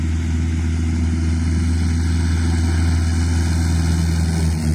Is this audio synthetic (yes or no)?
no